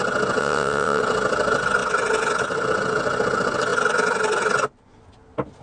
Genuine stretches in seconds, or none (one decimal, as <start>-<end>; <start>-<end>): 0.0-0.4; 1.0-5.6